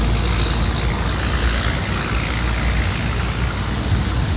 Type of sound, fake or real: real